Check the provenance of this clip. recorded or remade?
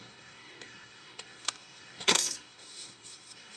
remade